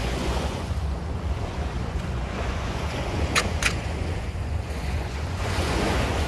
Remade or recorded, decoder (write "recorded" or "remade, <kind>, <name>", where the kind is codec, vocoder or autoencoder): remade, vocoder, Vocos